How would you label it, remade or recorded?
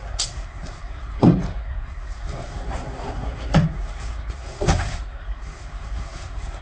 remade